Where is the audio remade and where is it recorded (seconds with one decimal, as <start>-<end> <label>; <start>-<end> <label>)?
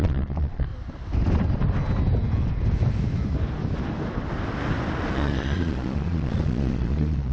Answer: 0.0-0.7 remade; 0.7-5.1 recorded; 5.1-7.3 remade